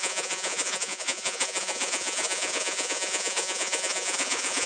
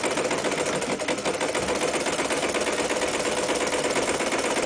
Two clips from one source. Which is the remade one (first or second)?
first